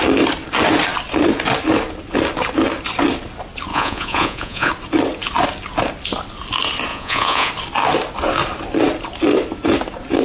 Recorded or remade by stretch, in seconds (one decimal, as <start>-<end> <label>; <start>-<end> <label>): 0.0-3.7 recorded; 3.7-4.7 remade; 4.7-6.9 recorded; 6.9-7.5 remade; 7.5-10.2 recorded